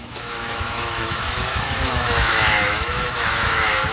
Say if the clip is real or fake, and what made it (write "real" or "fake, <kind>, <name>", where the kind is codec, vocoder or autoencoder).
fake, autoencoder, DAC-VAE